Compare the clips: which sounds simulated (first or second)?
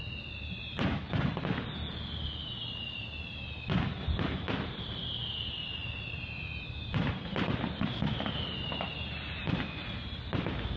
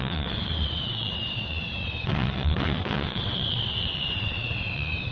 second